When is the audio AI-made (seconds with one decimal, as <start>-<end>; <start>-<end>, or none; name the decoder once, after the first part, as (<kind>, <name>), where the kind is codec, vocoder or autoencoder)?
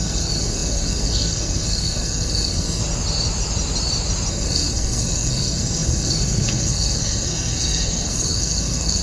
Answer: 0.0-2.8 (codec, SNAC); 4.3-9.0